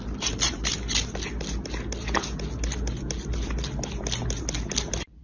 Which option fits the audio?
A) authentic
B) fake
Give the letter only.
A